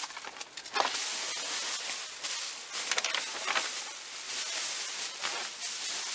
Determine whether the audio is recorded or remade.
recorded